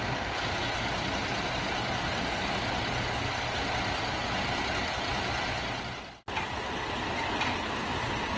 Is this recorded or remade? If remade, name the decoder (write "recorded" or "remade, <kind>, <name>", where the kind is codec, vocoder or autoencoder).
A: recorded